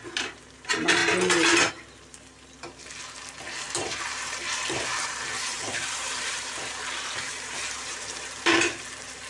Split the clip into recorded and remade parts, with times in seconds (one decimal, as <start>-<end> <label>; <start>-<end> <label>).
0.0-1.0 remade; 1.0-1.7 recorded; 1.7-9.3 remade